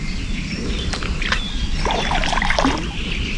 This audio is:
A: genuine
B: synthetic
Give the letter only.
A